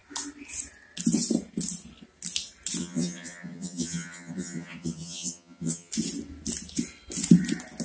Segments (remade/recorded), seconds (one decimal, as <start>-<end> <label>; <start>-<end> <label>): 0.0-2.8 recorded; 2.8-5.9 remade; 5.9-7.8 recorded